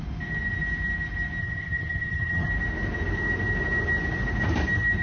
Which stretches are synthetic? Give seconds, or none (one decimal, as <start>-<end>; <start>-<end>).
1.4-2.5